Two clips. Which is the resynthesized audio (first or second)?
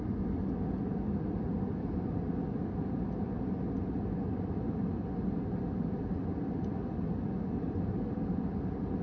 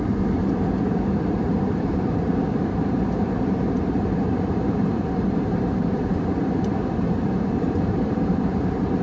second